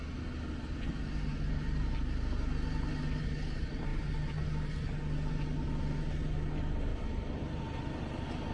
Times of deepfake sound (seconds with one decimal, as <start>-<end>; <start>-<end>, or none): 1.3-1.9; 6.9-7.6